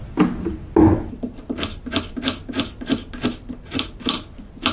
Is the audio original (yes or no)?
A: yes